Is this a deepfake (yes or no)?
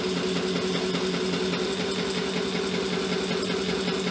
no